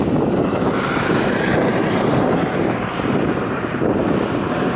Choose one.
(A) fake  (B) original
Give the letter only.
A